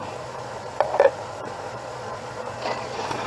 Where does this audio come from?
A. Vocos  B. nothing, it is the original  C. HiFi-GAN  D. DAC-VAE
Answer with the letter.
A